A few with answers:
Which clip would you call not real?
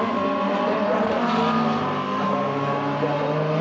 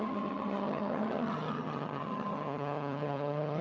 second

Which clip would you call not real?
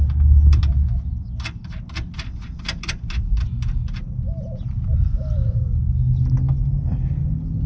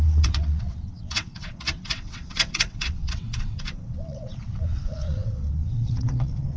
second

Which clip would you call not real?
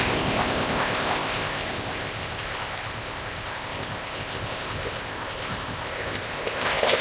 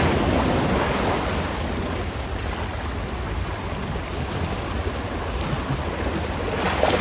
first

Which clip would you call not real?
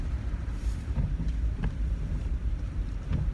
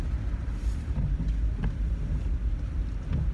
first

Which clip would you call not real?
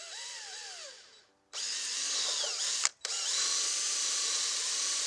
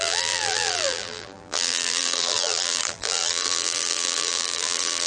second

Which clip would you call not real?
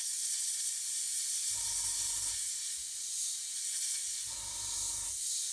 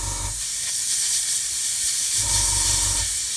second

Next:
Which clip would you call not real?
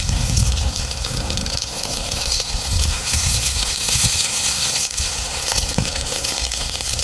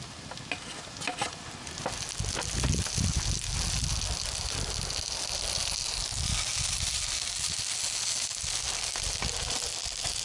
first